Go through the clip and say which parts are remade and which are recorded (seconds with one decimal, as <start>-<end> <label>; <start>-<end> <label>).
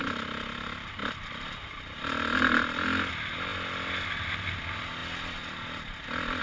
0.0-6.4 recorded